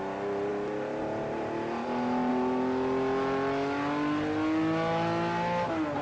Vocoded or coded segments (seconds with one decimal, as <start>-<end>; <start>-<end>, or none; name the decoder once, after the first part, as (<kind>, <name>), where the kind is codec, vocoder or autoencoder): 0.5-2.3 (vocoder, BigVGAN v2)